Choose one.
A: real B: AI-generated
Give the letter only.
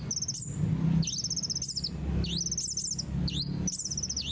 A